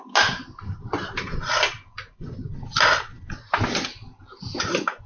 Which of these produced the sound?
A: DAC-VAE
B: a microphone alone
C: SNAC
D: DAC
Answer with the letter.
B